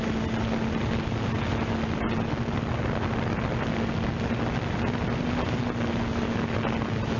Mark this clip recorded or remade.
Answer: recorded